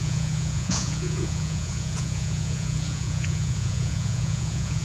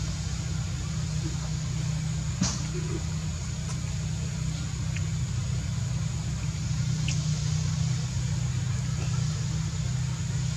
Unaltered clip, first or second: second